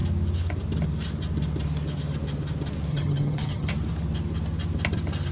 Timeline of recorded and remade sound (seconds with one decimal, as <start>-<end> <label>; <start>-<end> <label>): 0.0-2.9 recorded; 2.9-3.7 remade; 3.7-5.3 recorded